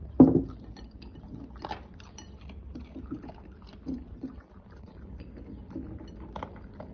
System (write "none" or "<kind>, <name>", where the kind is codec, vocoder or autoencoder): none